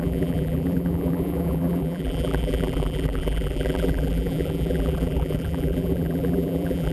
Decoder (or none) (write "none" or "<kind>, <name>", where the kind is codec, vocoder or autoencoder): vocoder, BigVGAN v2